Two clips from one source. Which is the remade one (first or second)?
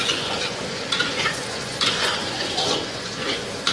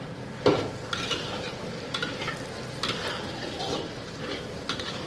first